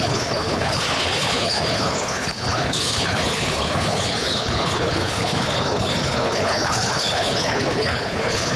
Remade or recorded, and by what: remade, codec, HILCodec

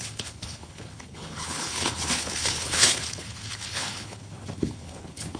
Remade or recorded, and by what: remade, codec, HILCodec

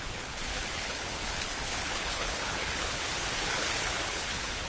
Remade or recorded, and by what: remade, codec, HILCodec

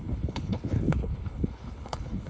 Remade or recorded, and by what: remade, codec, HILCodec